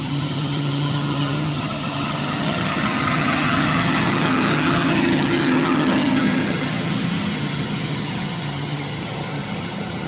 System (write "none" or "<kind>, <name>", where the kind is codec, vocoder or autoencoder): vocoder, HiFi-GAN